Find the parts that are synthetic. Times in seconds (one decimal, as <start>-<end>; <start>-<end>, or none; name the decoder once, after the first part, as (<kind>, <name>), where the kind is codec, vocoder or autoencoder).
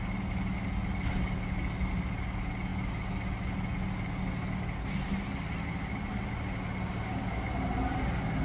none